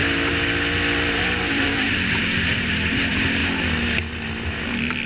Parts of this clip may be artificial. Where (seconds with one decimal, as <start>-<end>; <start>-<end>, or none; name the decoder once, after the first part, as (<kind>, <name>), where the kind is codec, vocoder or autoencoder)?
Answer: 1.1-3.4 (vocoder, BigVGAN v2)